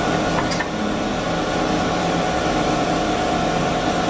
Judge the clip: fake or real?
real